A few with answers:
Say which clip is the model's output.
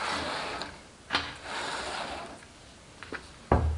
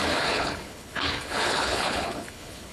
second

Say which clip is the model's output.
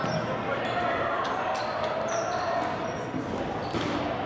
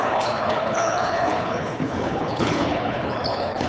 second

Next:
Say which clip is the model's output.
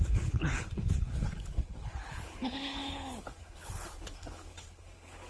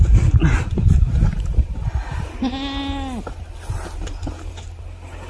first